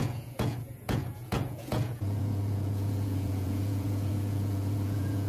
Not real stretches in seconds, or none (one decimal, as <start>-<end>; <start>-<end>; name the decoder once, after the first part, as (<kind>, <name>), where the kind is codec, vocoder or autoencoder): 0.0-5.3 (vocoder, Vocos)